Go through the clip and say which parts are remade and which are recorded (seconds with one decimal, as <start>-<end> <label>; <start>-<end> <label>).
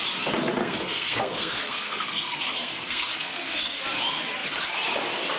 0.0-0.6 recorded; 0.6-3.8 remade; 3.8-5.4 recorded